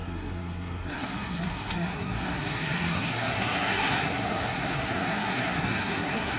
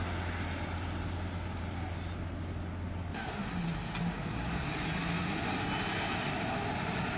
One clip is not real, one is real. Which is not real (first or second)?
first